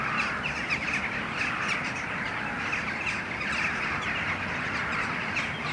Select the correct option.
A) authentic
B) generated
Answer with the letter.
A